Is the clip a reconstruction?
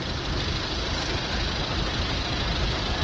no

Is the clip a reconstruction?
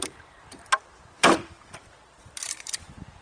yes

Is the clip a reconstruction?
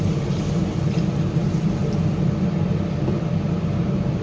no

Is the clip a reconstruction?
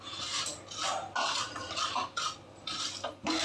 no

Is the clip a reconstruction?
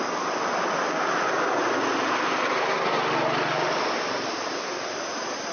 no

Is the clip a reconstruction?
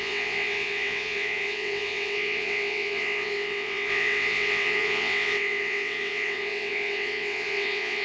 yes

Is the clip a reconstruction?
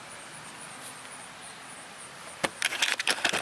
no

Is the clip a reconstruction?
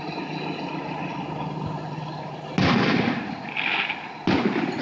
no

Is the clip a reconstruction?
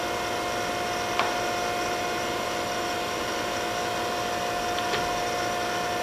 no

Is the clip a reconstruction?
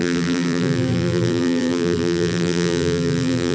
yes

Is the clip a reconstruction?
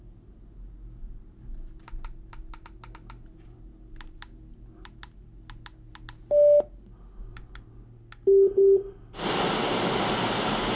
no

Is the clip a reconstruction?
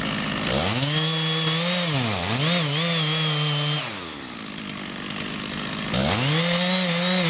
no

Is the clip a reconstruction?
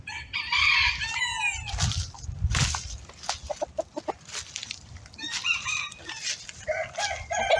no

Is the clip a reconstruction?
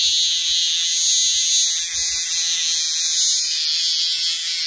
no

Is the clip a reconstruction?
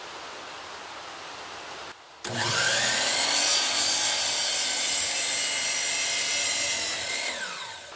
no